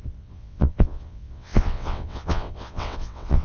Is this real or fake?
fake